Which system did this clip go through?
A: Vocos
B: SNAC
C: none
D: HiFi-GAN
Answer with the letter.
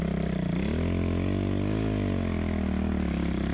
C